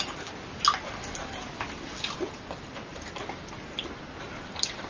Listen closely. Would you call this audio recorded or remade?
recorded